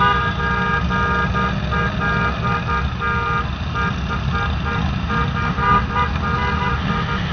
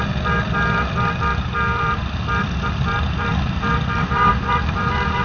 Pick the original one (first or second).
first